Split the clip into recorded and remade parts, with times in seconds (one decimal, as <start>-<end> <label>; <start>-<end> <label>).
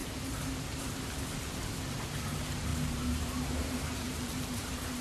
0.0-1.0 remade; 1.0-2.7 recorded; 2.7-5.0 remade